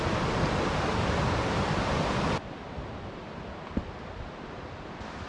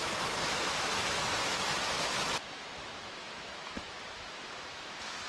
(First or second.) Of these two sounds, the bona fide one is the first